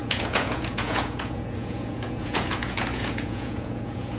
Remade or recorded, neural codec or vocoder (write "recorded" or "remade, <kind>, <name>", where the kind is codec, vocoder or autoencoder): remade, vocoder, Vocos